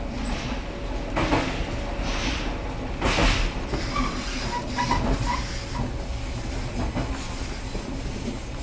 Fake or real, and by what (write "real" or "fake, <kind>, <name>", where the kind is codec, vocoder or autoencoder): real